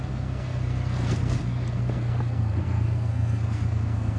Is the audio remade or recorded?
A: remade